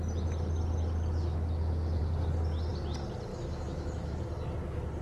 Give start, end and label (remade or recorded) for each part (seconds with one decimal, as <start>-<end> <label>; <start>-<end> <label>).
0.0-3.3 recorded; 3.3-4.2 remade; 4.2-5.0 recorded